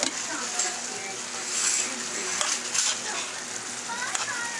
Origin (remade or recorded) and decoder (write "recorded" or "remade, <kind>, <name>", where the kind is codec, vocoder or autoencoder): recorded